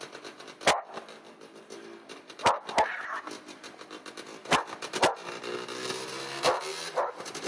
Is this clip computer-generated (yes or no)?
no